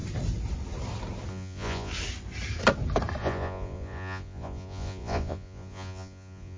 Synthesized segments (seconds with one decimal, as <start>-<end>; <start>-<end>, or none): 1.3-1.9; 3.2-6.6